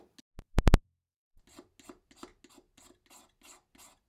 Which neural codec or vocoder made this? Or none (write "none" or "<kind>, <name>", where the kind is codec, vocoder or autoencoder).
none